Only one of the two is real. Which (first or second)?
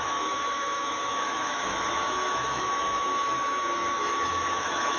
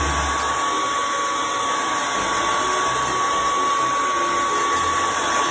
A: second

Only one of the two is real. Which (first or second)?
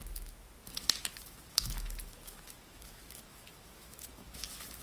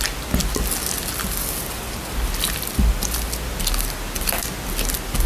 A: second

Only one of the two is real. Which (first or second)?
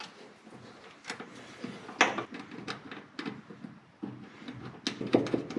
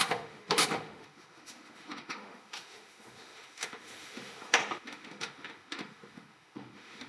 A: first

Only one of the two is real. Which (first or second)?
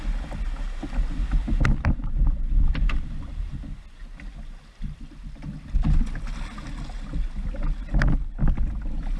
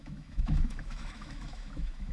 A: first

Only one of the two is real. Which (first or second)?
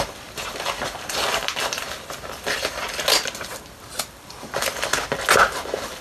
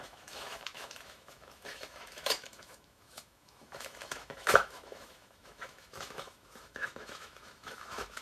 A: first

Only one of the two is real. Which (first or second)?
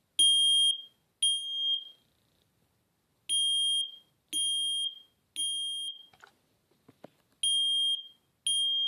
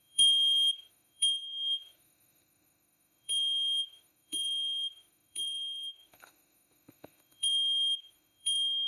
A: first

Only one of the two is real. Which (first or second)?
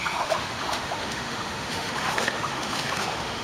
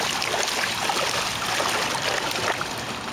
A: second